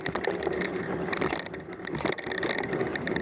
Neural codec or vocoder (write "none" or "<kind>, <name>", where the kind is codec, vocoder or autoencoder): none